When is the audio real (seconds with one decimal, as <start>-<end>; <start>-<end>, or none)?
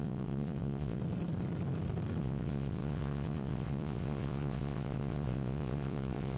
1.0-2.2